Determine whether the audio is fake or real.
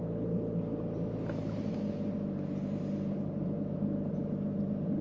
real